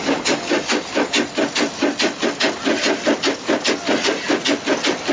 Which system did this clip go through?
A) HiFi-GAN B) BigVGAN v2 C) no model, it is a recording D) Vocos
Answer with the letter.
C